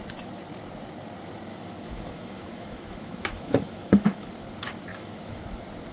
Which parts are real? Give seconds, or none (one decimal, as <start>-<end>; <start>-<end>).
0.0-1.5; 4.3-4.9; 5.4-5.9